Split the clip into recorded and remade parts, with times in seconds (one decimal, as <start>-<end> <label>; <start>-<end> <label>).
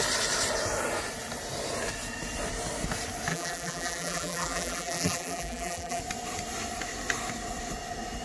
0.0-3.3 recorded; 3.3-6.0 remade; 6.0-8.2 recorded